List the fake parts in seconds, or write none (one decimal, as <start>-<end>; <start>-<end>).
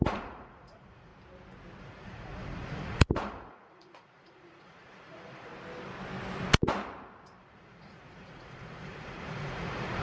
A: 0.0-1.1; 1.8-5.5; 7.4-10.0